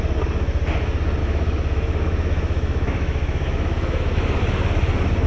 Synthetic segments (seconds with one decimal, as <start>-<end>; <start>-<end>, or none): 1.2-4.4